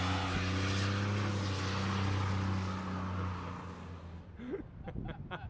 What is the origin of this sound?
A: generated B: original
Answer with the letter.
B